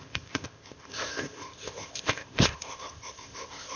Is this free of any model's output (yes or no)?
no